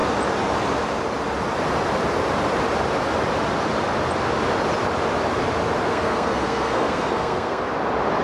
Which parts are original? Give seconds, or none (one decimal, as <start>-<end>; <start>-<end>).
0.0-5.9; 7.6-8.2